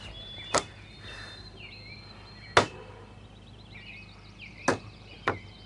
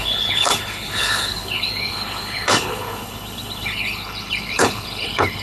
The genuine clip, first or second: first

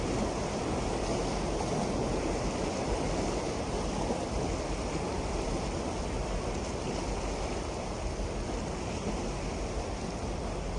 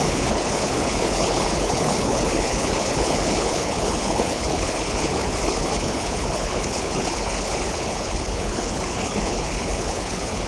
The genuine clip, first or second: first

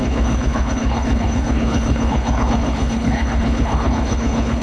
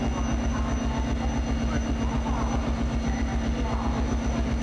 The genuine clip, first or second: second